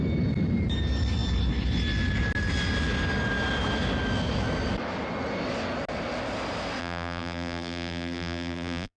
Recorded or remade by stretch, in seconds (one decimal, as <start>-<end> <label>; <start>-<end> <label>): 0.0-6.8 recorded; 6.8-9.0 remade

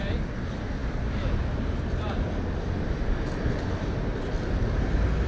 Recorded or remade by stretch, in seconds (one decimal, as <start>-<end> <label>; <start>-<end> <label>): 0.0-5.3 recorded

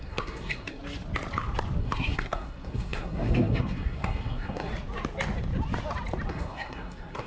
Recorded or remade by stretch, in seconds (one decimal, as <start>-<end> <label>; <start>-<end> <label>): 0.0-0.8 remade; 0.8-1.8 recorded; 1.8-4.7 remade; 4.7-6.3 recorded; 6.3-7.3 remade

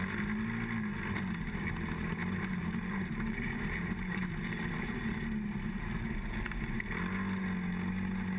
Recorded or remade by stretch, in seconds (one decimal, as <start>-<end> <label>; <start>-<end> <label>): 0.0-2.2 recorded; 2.2-5.1 remade; 5.1-8.4 recorded

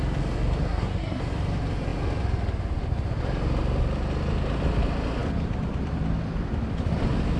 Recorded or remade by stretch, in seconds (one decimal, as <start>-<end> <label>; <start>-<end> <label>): 0.0-0.6 recorded; 0.6-1.2 remade; 1.2-7.4 recorded

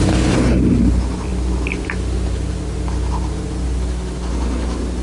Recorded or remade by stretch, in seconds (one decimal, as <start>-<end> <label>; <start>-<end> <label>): 0.0-5.0 recorded